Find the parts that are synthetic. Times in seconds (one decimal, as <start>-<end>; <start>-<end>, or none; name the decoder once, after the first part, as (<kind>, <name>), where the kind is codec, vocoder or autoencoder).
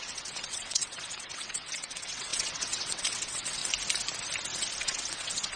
0.0-3.6 (vocoder, WaveNeXt); 4.8-5.6